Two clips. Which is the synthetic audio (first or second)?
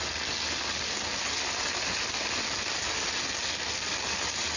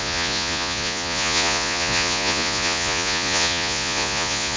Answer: second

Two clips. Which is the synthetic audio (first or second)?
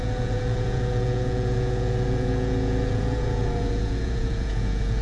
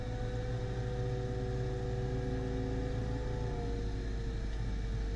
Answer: first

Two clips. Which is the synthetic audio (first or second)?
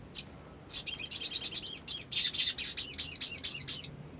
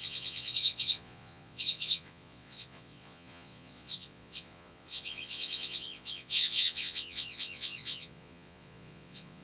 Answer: second